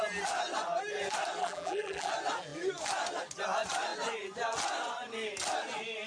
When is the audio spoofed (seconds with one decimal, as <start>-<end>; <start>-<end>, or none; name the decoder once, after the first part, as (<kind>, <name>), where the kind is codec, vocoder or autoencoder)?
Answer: 1.4-2.1 (vocoder, BigVGAN v2)